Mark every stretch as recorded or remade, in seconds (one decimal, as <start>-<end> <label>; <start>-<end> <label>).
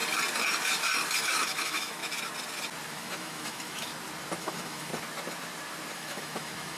0.0-1.2 recorded; 1.2-2.0 remade; 2.0-2.9 recorded; 2.9-3.9 remade; 3.9-4.4 recorded; 4.4-4.9 remade; 4.9-5.9 recorded; 5.9-6.8 remade